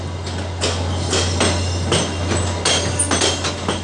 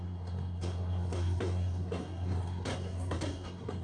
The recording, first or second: first